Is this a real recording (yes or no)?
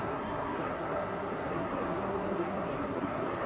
no